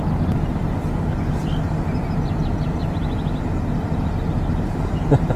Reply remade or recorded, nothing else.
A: recorded